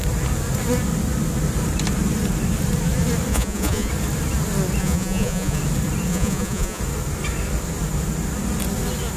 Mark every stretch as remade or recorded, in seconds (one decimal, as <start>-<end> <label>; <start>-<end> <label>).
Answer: 0.0-3.3 recorded; 3.3-3.9 remade; 3.9-4.8 recorded; 4.8-5.6 remade; 5.6-6.1 recorded; 6.1-6.8 remade; 6.8-9.2 recorded